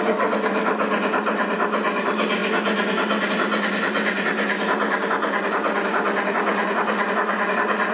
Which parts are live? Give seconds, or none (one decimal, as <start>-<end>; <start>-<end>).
0.0-7.9